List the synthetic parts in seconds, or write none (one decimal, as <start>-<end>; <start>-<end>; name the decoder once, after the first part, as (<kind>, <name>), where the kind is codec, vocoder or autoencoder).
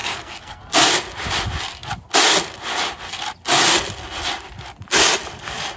0.0-0.6 (codec, SNAC)